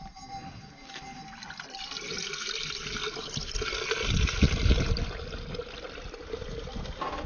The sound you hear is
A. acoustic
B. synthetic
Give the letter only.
A